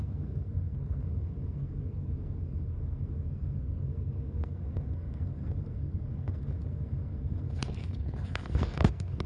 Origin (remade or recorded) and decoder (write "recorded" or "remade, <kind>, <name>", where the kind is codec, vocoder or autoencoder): remade, codec, SNAC